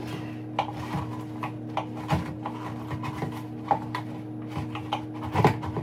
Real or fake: real